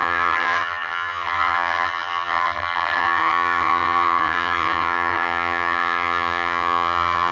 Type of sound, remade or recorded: remade